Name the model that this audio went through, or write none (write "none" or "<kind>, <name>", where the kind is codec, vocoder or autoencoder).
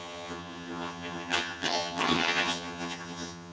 vocoder, HiFi-GAN